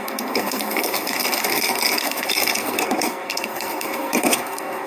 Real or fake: fake